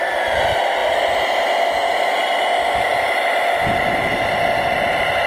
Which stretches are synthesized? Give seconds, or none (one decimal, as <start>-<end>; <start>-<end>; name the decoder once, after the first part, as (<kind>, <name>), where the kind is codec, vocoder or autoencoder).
none